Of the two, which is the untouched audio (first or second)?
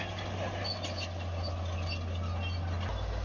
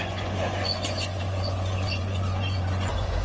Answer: first